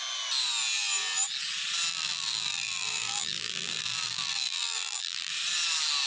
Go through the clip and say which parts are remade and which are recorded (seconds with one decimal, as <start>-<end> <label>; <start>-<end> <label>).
0.0-1.9 recorded; 1.9-5.3 remade; 5.3-6.1 recorded